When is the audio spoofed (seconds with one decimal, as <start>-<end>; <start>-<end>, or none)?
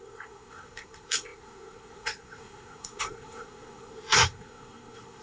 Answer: 0.0-5.2